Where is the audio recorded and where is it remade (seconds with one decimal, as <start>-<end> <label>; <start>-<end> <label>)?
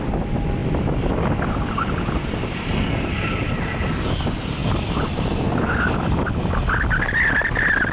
0.0-7.9 recorded